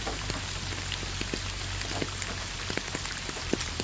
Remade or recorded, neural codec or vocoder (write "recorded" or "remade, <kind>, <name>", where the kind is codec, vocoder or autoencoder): recorded